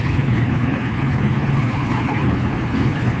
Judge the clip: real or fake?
fake